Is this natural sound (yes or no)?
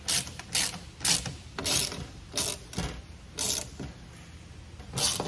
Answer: yes